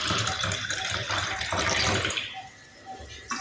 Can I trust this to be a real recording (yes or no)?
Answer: no